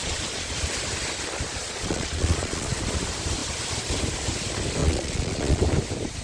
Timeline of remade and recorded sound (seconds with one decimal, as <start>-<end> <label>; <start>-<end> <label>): 0.0-0.6 remade; 0.6-1.6 recorded; 1.6-2.8 remade; 2.8-4.8 recorded; 4.8-5.6 remade; 5.6-6.2 recorded